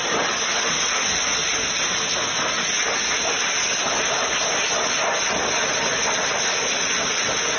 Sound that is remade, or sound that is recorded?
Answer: recorded